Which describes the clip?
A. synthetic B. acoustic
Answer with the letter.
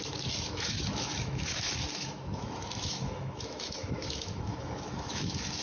A